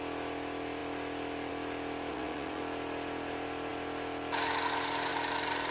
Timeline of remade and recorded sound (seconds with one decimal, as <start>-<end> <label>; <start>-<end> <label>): 0.0-2.1 recorded; 2.1-2.6 remade; 2.6-5.7 recorded